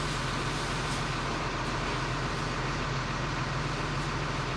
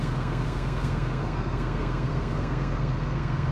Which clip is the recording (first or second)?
first